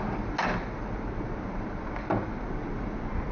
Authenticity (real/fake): real